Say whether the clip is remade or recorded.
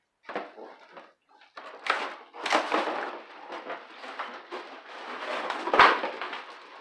recorded